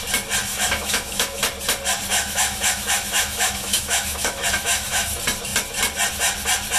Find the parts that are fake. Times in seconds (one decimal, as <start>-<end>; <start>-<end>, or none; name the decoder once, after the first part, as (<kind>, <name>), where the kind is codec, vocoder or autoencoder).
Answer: 0.5-1.4 (autoencoder, DAC-VAE); 2.1-5.1